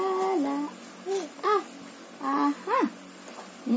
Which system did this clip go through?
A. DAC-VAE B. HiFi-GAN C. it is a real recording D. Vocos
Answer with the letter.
C